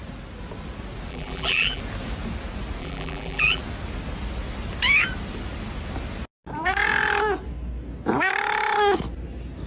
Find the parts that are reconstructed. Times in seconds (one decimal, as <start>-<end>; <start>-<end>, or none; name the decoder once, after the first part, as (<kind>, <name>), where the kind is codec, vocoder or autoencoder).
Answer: 1.1-1.8 (vocoder, BigVGAN v2); 2.8-3.6

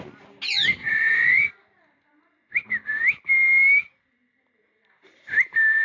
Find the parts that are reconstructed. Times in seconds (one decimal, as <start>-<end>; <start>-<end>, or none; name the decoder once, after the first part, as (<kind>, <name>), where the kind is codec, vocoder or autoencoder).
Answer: 0.8-1.5 (vocoder, WaveNeXt)

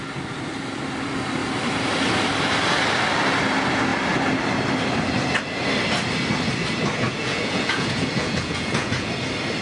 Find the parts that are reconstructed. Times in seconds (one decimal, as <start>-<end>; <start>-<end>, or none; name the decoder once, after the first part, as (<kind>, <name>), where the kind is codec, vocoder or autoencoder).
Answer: 7.2-9.1 (vocoder, Vocos)

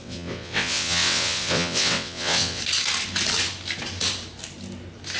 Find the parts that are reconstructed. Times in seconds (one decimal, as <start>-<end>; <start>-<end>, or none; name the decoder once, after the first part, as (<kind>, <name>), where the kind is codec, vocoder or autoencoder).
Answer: 0.0-2.6 (vocoder, WaveNeXt)

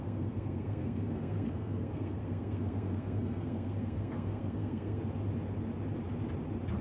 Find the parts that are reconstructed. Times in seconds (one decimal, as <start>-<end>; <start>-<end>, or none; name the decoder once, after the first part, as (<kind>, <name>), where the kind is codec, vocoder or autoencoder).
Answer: 0.0-5.0 (codec, SNAC)

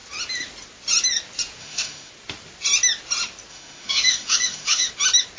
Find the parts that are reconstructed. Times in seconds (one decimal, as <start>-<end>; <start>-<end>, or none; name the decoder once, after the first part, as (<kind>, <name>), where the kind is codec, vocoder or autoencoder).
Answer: 1.6-2.1 (autoencoder, DAC-VAE); 3.5-4.9

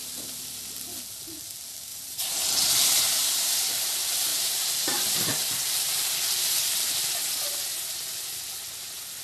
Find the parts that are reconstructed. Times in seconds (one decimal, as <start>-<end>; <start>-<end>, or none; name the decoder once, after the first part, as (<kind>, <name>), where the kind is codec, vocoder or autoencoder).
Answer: 1.9-3.0 (vocoder, BigVGAN v2); 4.3-7.1

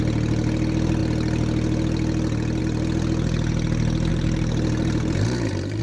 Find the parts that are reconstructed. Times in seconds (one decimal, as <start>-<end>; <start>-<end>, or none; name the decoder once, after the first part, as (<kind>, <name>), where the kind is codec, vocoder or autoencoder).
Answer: 4.1-5.8 (vocoder, BigVGAN v2)